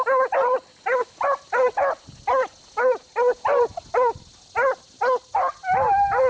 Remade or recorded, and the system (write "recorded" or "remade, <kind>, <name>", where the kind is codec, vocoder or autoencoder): recorded